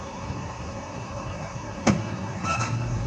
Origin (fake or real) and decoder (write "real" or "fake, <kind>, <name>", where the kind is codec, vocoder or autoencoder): fake, codec, SNAC